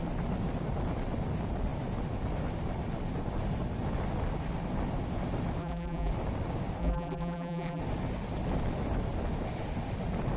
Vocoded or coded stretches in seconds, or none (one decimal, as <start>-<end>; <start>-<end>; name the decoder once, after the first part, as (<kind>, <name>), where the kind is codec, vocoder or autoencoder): 5.6-6.1 (vocoder, BigVGAN v2); 6.8-7.8

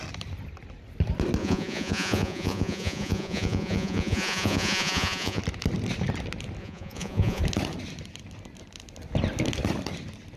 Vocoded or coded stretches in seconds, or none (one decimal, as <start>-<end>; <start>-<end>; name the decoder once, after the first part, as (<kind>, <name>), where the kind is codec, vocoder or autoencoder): 1.4-5.4 (vocoder, Vocos); 6.6-7.4

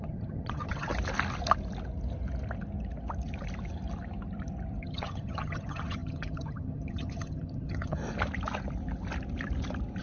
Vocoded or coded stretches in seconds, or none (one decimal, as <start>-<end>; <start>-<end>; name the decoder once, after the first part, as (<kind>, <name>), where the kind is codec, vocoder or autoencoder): 0.0-0.9 (vocoder, HiFi-GAN); 4.8-8.0

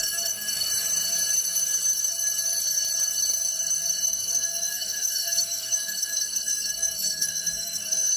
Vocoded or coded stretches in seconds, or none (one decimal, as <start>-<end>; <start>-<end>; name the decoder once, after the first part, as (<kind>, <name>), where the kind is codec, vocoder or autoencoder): 0.0-0.7 (codec, SNAC); 4.1-8.2